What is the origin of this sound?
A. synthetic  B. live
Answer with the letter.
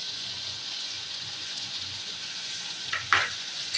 A